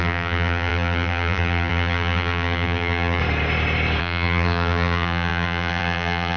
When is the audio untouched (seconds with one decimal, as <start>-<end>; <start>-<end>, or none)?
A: 3.2-4.0